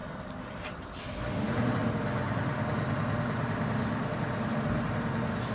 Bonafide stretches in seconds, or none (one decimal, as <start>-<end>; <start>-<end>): 0.0-5.5